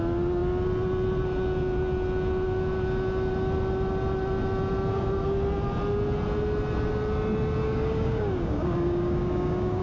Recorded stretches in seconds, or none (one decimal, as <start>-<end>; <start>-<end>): 0.0-7.6